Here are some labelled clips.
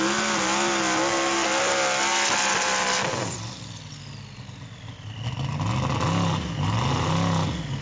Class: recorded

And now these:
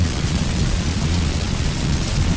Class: remade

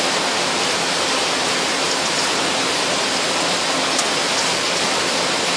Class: recorded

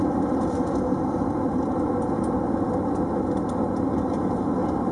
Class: recorded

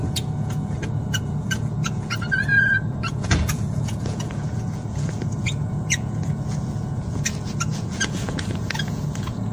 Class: remade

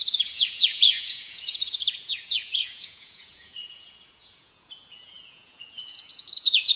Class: remade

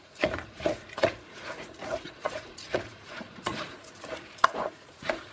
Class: remade